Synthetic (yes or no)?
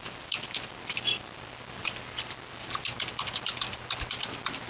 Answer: no